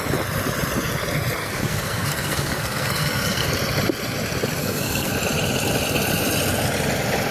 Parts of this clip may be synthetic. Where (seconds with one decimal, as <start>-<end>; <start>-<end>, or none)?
1.4-3.5; 4.6-5.1